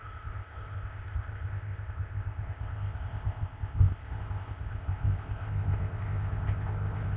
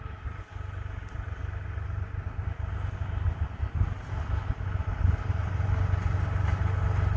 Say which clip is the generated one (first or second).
first